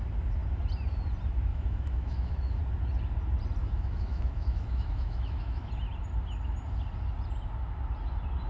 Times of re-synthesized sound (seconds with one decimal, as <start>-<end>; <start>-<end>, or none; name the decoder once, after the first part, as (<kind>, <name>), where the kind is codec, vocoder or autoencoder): 1.5-2.6 (autoencoder, DAC-VAE); 3.6-5.7